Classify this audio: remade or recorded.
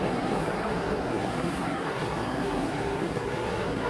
remade